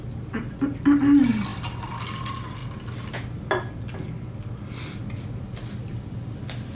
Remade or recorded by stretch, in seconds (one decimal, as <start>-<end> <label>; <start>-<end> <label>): 0.0-1.5 recorded; 1.5-2.1 remade; 2.1-6.7 recorded